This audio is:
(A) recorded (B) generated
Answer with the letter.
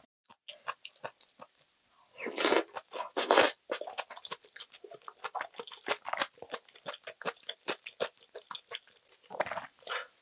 A